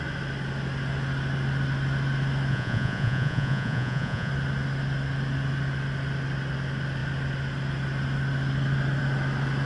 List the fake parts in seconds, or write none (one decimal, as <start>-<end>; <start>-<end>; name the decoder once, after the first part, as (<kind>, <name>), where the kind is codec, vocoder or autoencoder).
2.5-4.3 (vocoder, Vocos)